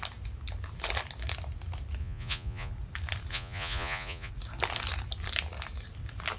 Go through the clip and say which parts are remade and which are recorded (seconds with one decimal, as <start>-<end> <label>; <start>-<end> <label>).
0.0-2.0 recorded; 2.0-2.7 remade; 2.7-3.3 recorded; 3.3-4.3 remade; 4.3-6.4 recorded